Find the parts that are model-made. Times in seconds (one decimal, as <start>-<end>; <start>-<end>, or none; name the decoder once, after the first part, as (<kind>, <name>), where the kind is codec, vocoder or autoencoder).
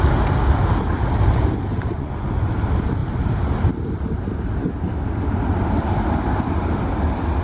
1.7-2.3 (vocoder, Vocos)